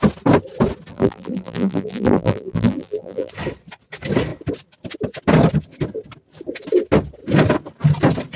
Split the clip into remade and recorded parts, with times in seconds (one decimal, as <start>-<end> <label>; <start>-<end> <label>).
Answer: 0.0-0.9 recorded; 0.9-3.3 remade; 3.3-8.4 recorded

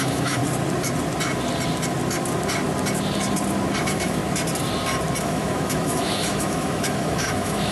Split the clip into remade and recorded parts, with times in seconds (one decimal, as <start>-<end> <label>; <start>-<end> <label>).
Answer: 0.0-0.4 remade; 0.4-3.8 recorded; 3.8-4.2 remade; 4.2-5.2 recorded; 5.2-7.7 remade

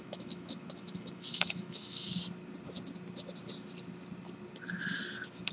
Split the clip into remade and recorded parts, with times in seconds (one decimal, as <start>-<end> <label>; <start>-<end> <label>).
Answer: 0.0-2.1 remade; 2.1-5.5 recorded